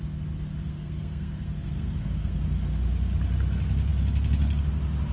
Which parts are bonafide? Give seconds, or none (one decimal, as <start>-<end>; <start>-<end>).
0.0-0.6; 2.4-5.1